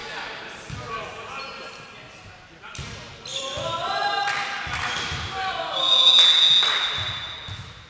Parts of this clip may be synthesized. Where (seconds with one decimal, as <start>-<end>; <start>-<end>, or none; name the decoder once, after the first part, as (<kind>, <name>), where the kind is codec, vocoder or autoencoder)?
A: 3.3-4.1 (vocoder, BigVGAN v2)